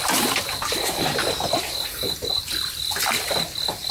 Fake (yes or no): yes